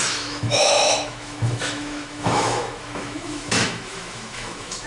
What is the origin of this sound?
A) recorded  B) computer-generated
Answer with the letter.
B